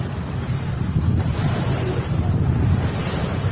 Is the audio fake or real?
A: fake